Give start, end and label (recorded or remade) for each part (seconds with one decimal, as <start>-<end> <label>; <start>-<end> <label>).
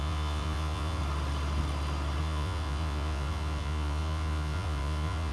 0.0-1.0 remade; 1.0-2.2 recorded; 2.2-5.3 remade